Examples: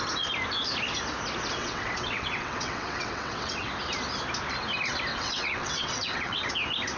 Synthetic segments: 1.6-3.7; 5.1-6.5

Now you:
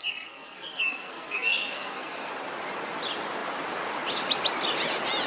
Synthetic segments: 0.0-2.3

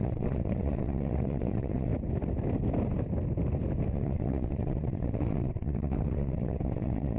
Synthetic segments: 0.0-1.9; 3.9-7.2